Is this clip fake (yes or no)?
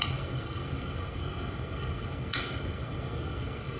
yes